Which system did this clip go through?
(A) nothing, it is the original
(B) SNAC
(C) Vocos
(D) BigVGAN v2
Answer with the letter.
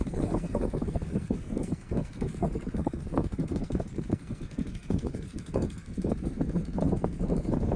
B